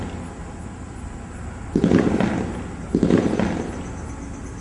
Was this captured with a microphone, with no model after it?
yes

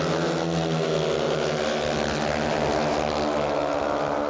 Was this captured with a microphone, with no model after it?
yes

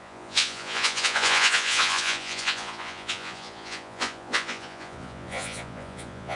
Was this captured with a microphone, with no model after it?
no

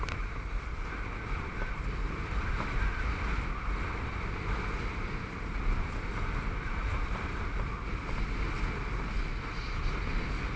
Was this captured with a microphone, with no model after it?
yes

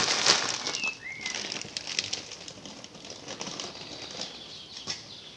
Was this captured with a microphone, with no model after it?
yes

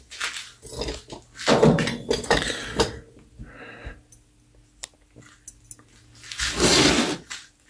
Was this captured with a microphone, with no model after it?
yes